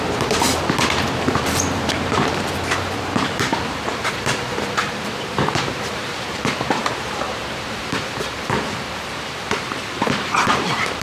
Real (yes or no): no